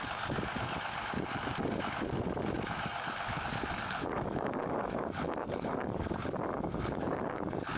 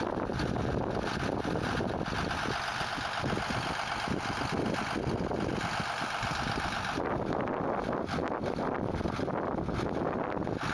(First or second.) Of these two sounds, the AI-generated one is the first